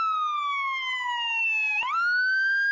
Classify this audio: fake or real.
real